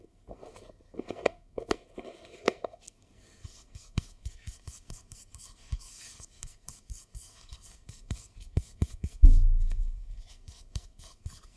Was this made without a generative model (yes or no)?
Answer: no